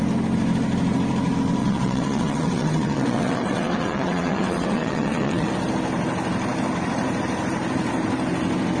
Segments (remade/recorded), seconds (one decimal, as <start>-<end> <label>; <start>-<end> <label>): 0.0-1.6 recorded; 1.6-5.5 remade; 5.5-8.8 recorded